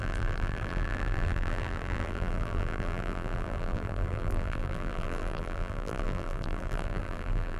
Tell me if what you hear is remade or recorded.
remade